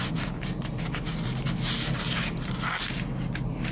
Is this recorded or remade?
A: recorded